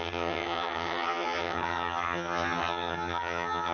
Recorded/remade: remade